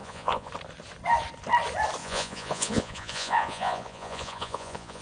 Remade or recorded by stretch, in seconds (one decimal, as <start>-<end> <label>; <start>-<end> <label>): 0.0-0.5 remade; 0.5-2.0 recorded; 2.0-5.0 remade